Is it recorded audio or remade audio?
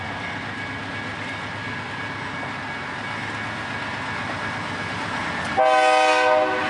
recorded